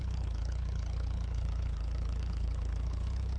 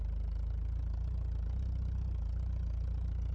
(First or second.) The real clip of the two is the second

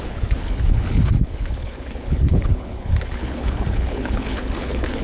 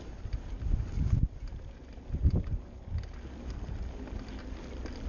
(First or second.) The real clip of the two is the second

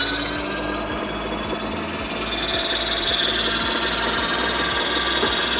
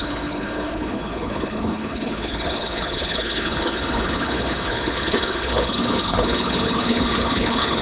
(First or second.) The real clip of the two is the first